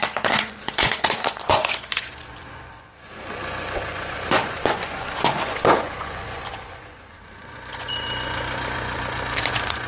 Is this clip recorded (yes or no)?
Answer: no